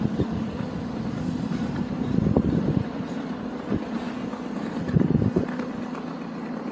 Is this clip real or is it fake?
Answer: real